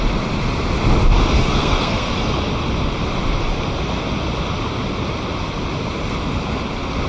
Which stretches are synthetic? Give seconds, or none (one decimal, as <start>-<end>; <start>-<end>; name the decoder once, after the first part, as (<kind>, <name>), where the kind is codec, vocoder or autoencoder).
1.4-2.1 (codec, SNAC)